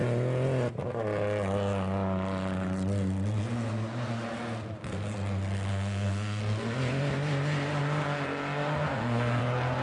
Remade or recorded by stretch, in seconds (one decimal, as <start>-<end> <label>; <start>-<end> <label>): 0.0-5.7 recorded; 5.7-6.4 remade; 6.4-8.9 recorded; 8.9-9.4 remade; 9.4-9.8 recorded